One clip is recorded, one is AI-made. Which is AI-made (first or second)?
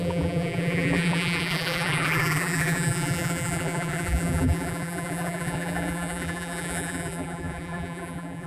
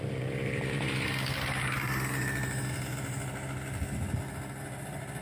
first